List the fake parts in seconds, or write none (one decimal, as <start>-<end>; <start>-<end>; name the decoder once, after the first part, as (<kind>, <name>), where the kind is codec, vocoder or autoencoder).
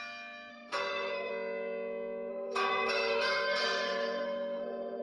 0.5-1.3 (codec, SNAC); 2.3-5.0